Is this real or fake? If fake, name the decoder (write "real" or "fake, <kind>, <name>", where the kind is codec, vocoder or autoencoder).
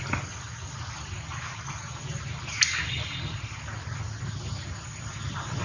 real